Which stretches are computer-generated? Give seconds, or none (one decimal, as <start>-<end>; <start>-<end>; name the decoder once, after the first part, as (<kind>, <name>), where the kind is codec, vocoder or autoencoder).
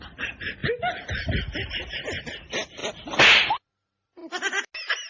none